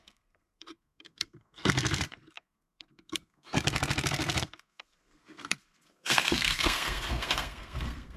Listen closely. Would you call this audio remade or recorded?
remade